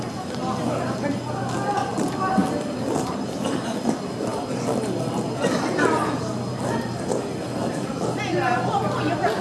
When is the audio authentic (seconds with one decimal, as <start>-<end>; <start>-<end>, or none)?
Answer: 0.0-9.4